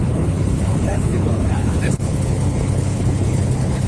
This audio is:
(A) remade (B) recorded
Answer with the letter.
A